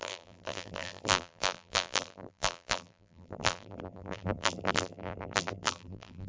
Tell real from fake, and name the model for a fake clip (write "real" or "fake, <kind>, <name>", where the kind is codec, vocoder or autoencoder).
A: fake, vocoder, BigVGAN v2